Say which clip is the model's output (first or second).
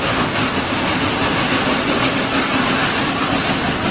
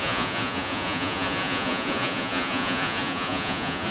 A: second